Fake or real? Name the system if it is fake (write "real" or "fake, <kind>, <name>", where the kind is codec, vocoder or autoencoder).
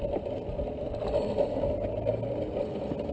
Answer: real